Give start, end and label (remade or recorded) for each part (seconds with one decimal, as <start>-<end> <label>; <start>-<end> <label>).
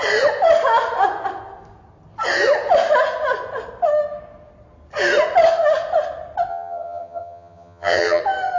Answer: 0.0-6.5 recorded; 6.5-8.2 remade; 8.2-8.6 recorded